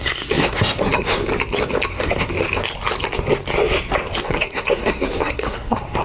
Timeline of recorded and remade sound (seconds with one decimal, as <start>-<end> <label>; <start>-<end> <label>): 0.0-1.2 remade; 1.2-1.9 recorded; 1.9-2.3 remade; 2.3-4.2 recorded; 4.2-6.0 remade